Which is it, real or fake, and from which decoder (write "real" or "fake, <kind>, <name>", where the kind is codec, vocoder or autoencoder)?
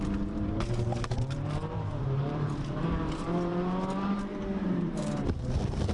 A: fake, vocoder, BigVGAN v2